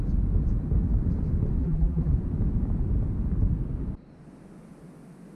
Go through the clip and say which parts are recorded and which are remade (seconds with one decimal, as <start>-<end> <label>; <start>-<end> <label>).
0.0-1.6 recorded; 1.6-2.1 remade; 2.1-5.3 recorded